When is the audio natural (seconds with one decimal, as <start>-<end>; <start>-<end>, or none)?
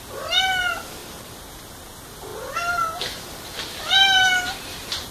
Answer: 0.0-1.0; 1.6-5.1